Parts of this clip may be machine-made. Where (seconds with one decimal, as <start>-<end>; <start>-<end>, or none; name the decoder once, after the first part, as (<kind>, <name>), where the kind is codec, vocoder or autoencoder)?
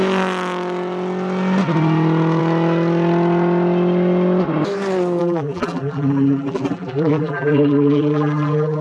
5.2-8.8 (vocoder, BigVGAN v2)